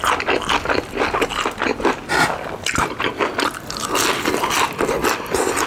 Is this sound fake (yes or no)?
no